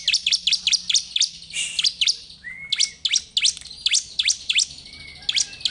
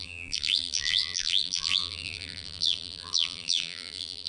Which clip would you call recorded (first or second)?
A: first